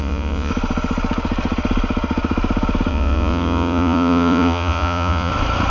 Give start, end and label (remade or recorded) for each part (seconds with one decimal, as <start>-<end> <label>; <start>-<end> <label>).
0.0-0.5 remade; 0.5-2.9 recorded; 2.9-5.3 remade; 5.3-5.7 recorded